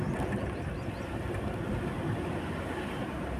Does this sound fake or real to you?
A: real